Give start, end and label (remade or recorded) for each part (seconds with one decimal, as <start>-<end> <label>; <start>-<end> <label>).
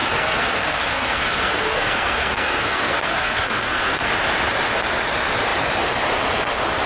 0.0-4.1 remade; 4.1-6.9 recorded